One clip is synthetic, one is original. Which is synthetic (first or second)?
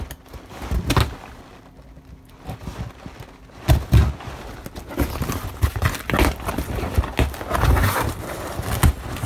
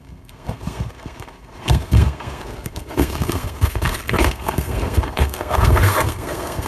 second